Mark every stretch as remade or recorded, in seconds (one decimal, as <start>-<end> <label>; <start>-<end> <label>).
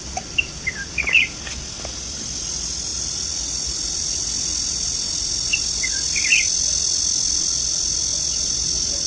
0.0-9.1 recorded